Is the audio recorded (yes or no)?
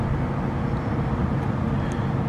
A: yes